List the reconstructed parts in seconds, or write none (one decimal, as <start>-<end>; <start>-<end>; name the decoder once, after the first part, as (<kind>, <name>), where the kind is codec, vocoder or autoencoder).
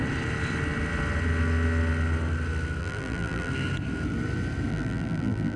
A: 2.8-3.5 (vocoder, BigVGAN v2); 4.7-5.6